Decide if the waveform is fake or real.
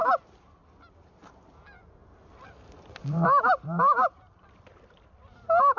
fake